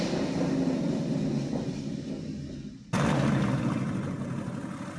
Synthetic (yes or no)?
no